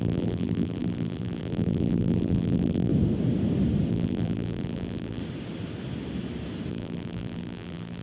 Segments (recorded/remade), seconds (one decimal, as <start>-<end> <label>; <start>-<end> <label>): 0.0-2.9 remade; 2.9-3.9 recorded; 3.9-5.2 remade; 5.2-6.7 recorded; 6.7-8.0 remade